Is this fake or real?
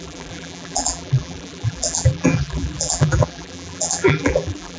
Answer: fake